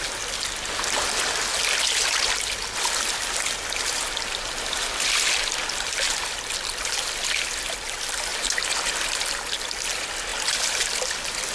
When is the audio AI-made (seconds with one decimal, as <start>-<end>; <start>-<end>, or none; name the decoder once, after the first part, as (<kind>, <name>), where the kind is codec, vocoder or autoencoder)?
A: none

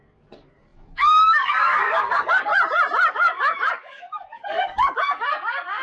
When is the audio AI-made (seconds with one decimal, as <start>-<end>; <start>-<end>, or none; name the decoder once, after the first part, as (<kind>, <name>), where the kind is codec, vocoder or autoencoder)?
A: 0.0-2.5 (codec, DAC); 3.1-5.8

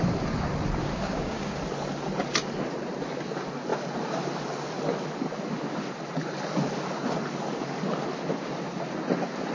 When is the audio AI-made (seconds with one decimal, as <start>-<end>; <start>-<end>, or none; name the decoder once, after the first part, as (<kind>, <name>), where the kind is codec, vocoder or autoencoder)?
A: 0.8-1.6 (codec, DAC)

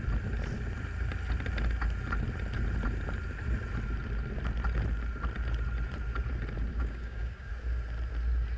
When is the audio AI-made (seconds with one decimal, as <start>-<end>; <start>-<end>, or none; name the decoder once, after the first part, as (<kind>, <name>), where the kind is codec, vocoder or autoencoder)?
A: 6.7-7.5 (codec, DAC)